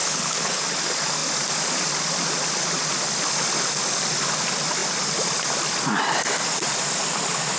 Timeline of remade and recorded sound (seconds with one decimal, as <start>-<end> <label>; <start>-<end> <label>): 0.0-0.6 remade; 0.6-7.6 recorded